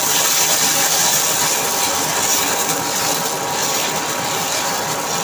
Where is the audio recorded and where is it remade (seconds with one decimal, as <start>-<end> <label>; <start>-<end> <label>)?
0.0-2.3 recorded; 2.3-3.1 remade; 3.1-3.6 recorded; 3.6-4.8 remade; 4.8-5.2 recorded